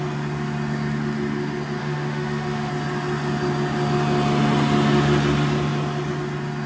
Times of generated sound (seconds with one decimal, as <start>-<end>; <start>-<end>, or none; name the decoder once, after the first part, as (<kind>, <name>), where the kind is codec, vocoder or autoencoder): 1.8-2.7 (autoencoder, DAC-VAE)